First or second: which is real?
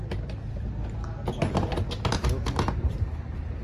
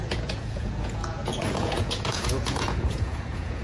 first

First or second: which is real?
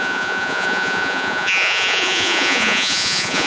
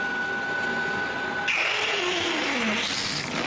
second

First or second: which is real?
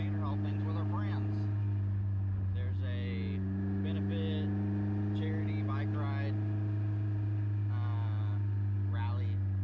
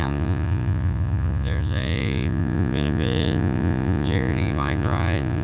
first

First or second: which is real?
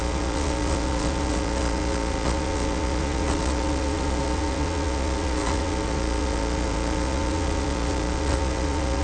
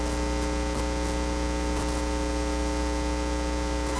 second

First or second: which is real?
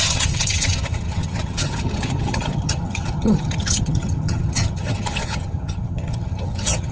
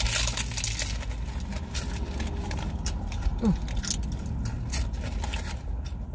second